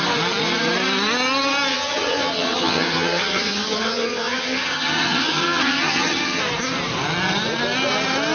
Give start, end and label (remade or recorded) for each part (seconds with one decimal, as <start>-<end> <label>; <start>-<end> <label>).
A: 0.0-1.7 recorded; 1.7-6.4 remade; 6.4-8.3 recorded